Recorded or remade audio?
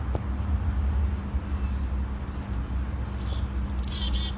recorded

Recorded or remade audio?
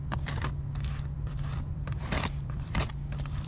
remade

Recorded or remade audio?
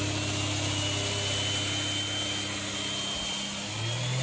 recorded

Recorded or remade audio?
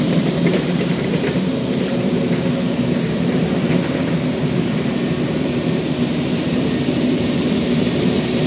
remade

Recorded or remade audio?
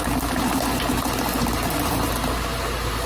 recorded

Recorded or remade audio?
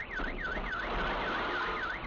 recorded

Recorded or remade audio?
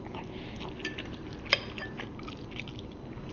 recorded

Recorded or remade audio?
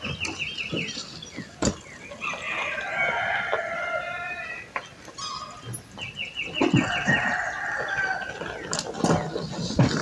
recorded